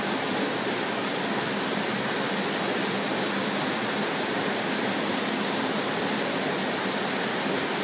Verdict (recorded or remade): recorded